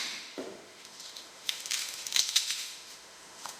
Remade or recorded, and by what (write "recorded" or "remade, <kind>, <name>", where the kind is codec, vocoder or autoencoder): remade, autoencoder, DAC-VAE